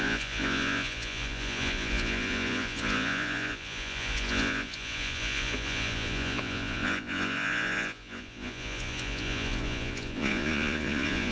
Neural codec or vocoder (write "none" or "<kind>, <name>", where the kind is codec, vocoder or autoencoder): vocoder, Vocos